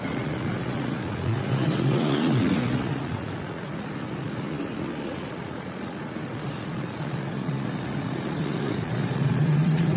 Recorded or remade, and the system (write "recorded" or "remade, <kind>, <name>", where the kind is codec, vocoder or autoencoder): remade, vocoder, Vocos